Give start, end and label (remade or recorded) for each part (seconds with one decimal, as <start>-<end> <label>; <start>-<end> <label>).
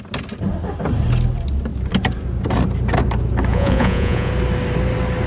0.0-3.5 recorded; 3.5-4.3 remade; 4.3-5.3 recorded